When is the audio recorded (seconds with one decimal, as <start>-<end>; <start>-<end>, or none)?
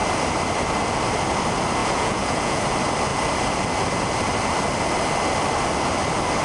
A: 0.0-1.8; 2.6-6.4